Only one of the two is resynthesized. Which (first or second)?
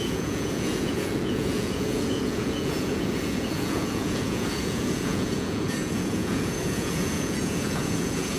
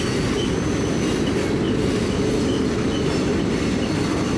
first